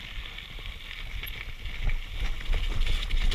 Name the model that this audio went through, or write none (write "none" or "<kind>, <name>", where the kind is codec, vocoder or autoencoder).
none